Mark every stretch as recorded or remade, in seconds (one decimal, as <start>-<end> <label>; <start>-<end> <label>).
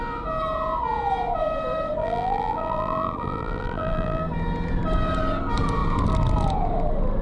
0.0-2.0 recorded; 2.0-4.2 remade; 4.2-7.2 recorded